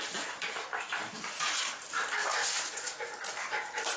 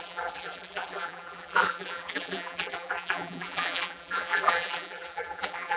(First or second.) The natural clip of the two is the first